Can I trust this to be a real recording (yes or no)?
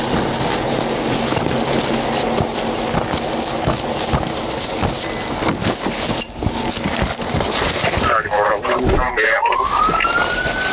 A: yes